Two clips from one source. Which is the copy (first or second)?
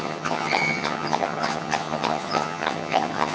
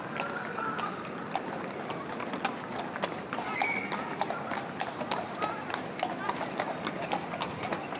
first